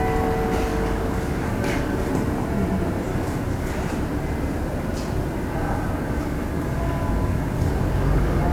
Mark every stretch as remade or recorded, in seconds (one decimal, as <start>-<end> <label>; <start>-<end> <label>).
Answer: 0.0-0.7 recorded; 0.7-2.1 remade; 2.1-3.1 recorded; 3.1-3.7 remade; 3.7-5.6 recorded; 5.6-8.5 remade